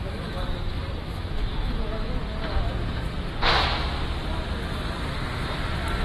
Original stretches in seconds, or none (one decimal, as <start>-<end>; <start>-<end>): 2.2-6.0